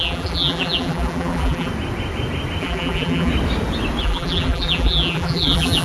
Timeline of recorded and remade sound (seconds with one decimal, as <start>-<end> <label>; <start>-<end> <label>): 0.0-1.7 remade; 1.7-2.6 recorded; 2.6-3.3 remade; 3.3-4.0 recorded; 4.0-5.8 remade